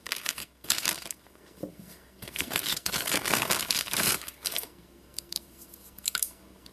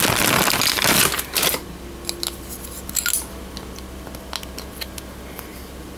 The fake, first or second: first